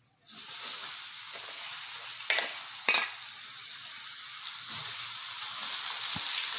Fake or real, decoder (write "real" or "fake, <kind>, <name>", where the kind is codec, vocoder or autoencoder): real